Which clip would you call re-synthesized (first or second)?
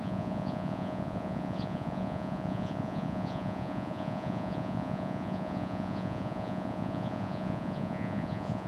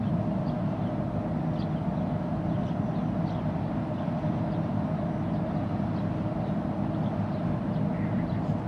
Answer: first